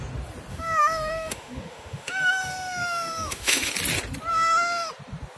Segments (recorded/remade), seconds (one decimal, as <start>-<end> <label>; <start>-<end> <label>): 0.0-0.5 recorded; 0.5-3.7 remade; 3.7-4.3 recorded; 4.3-4.9 remade; 4.9-5.4 recorded